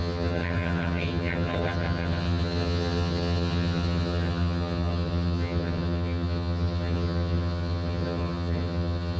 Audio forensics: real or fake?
fake